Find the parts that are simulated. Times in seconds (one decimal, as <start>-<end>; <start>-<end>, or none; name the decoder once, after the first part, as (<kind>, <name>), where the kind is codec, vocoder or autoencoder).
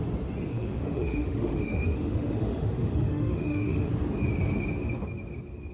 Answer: 0.5-3.9 (autoencoder, DAC-VAE)